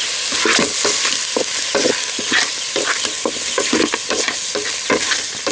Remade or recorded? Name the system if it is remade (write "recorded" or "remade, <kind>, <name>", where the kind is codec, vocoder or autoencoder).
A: recorded